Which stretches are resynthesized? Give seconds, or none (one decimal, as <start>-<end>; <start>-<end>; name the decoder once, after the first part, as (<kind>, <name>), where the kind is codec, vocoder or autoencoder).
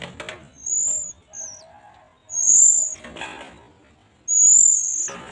none